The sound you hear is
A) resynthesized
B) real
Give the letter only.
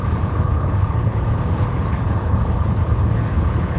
A